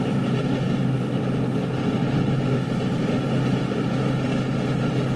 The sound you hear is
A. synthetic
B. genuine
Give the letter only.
B